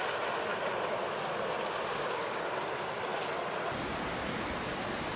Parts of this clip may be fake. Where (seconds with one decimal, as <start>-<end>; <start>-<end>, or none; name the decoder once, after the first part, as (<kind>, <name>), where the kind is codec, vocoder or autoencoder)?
1.9-2.4 (codec, DAC)